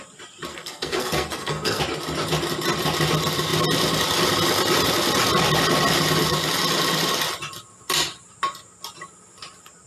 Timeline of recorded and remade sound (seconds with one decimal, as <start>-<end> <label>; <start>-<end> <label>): 0.0-0.5 recorded; 0.5-1.8 remade; 1.8-9.9 recorded